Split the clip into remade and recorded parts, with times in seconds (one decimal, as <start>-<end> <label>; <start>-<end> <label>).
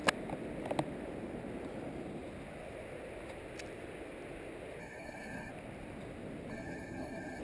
0.0-4.8 recorded; 4.8-5.5 remade; 5.5-6.5 recorded; 6.5-7.4 remade